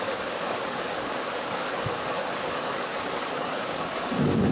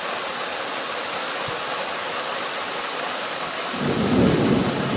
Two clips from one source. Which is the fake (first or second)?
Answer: first